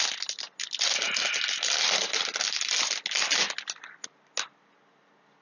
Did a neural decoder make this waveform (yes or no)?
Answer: no